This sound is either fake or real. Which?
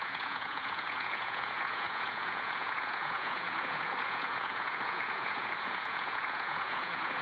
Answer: fake